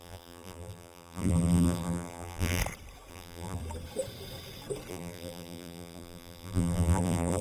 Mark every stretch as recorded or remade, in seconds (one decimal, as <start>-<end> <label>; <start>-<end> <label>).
0.0-2.6 remade; 2.6-3.1 recorded; 3.1-3.6 remade; 3.6-4.9 recorded; 4.9-7.4 remade